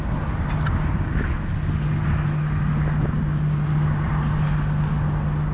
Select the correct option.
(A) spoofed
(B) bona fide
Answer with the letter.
B